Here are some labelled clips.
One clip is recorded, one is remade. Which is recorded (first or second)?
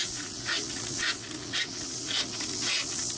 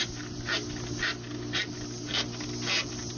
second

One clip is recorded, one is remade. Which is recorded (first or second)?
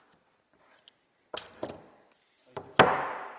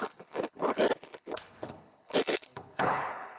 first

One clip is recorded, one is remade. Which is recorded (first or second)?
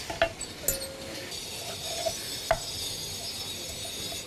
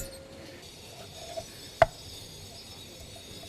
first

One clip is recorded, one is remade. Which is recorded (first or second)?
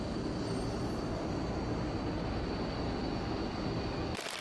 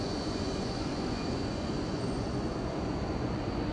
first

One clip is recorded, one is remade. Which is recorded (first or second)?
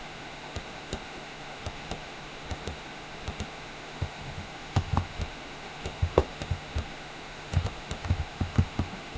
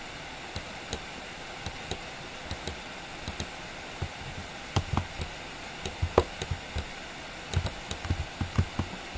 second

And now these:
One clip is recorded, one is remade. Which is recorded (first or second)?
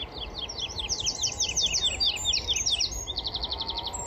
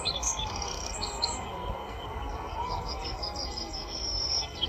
first